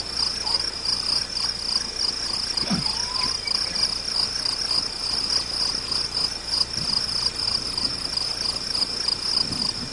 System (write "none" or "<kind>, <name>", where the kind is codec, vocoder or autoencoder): none